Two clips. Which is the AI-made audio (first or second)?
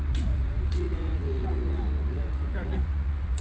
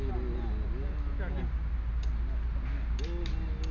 first